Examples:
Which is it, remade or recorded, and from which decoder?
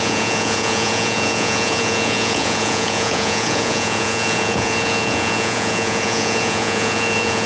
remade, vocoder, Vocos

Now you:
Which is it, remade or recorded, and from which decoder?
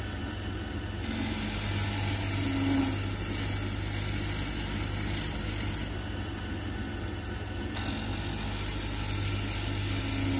recorded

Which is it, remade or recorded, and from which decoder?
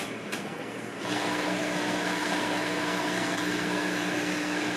remade, codec, SNAC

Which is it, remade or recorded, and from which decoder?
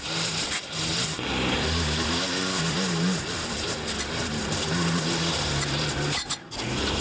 recorded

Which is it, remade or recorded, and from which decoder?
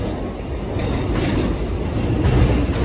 recorded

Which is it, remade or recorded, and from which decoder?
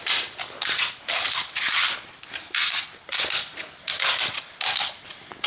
remade, vocoder, BigVGAN v2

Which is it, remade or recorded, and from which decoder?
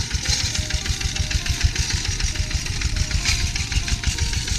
recorded